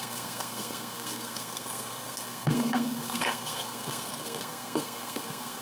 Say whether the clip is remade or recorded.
remade